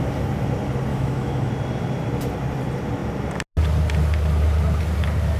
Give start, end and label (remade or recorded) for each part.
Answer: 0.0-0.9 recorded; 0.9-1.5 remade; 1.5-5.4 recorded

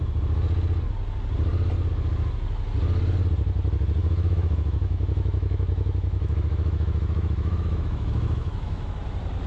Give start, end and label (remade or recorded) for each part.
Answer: 0.0-4.0 recorded; 4.0-8.9 remade; 8.9-9.5 recorded

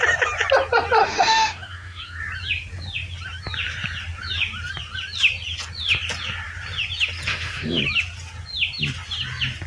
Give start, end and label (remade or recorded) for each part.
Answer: 0.0-1.0 recorded; 1.0-2.2 remade; 2.2-7.3 recorded; 7.3-7.8 remade; 7.8-9.7 recorded

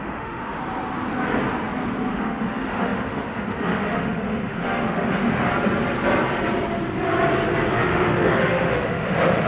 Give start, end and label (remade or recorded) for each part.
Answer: 0.0-0.6 remade; 0.6-2.1 recorded; 2.1-5.5 remade; 5.5-7.7 recorded; 7.7-9.5 remade